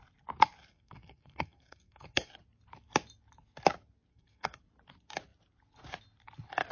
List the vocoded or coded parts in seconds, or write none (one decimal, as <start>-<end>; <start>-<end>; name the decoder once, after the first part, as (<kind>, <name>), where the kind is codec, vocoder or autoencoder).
0.7-2.3 (codec, SNAC); 4.1-4.6